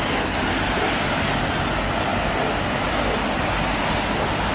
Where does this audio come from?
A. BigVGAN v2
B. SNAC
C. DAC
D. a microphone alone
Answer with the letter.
D